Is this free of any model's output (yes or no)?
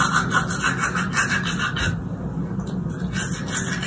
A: yes